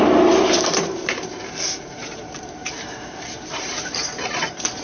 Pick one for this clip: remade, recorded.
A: remade